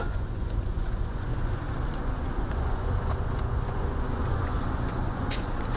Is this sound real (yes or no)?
no